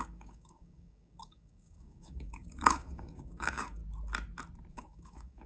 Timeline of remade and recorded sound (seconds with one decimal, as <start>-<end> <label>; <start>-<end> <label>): 0.0-3.8 remade; 3.8-4.7 recorded; 4.7-5.5 remade

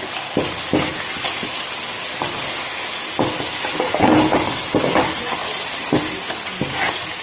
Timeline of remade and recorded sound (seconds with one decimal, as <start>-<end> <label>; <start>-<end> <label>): 0.0-7.2 recorded

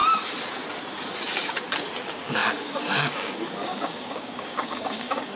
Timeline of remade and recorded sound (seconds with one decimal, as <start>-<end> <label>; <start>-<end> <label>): 0.0-2.0 recorded; 2.0-5.3 remade

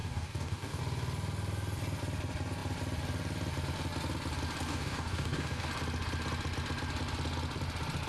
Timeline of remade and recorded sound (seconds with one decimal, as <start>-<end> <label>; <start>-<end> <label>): 0.0-0.8 remade; 0.8-4.7 recorded; 4.7-5.7 remade; 5.7-8.1 recorded